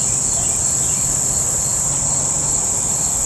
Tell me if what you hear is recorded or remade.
recorded